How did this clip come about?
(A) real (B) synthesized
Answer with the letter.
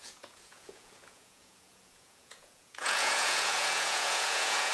B